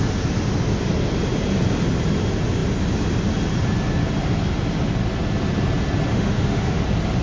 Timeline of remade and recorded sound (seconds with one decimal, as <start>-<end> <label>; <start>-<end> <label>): 0.0-6.1 recorded; 6.1-6.8 remade; 6.8-7.2 recorded